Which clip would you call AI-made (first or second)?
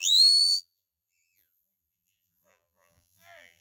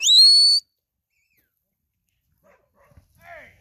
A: first